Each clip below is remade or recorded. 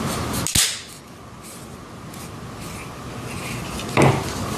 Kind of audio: recorded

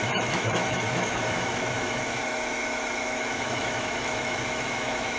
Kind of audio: remade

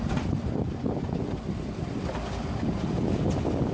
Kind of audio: recorded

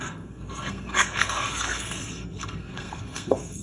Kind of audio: remade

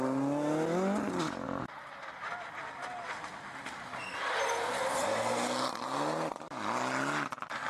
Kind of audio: recorded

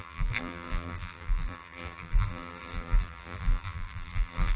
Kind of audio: remade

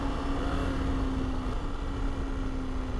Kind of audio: recorded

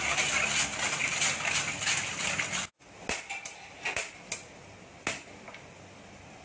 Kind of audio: recorded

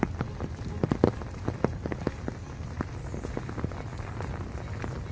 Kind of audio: recorded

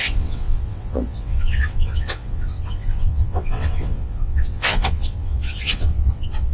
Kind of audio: remade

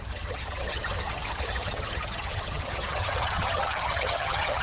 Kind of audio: remade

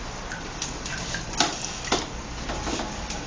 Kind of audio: recorded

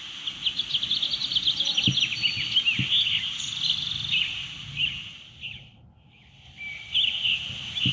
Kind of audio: recorded